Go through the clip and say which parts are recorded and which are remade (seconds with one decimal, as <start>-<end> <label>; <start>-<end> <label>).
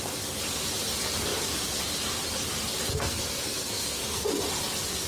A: 0.0-2.9 recorded; 2.9-4.4 remade; 4.4-5.1 recorded